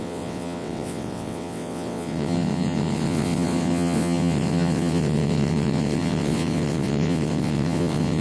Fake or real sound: fake